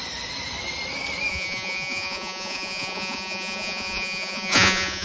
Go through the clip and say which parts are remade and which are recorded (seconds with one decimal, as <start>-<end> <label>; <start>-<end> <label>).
0.0-1.3 recorded; 1.3-5.0 remade